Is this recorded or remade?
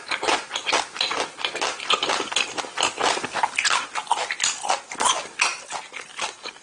recorded